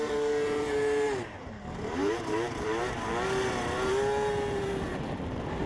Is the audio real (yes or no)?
no